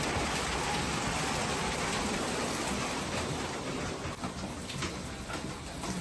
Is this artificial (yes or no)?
no